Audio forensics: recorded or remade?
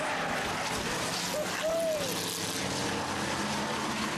recorded